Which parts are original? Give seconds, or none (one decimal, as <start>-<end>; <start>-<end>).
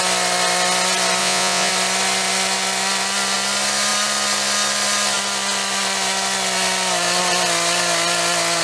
0.0-1.2; 1.7-8.6